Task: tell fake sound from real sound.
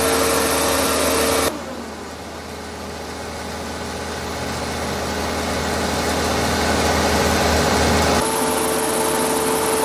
real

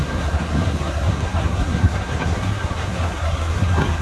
fake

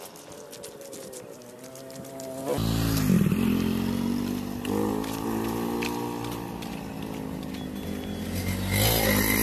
real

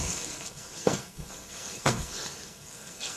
fake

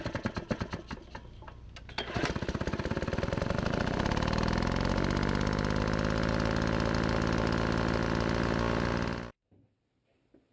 real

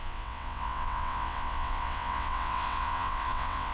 fake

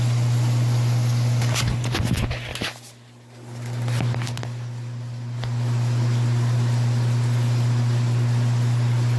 real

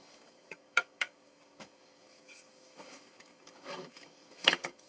fake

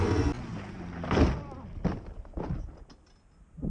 real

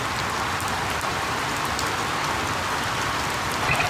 real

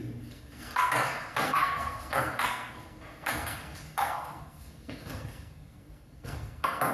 fake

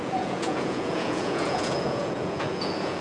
fake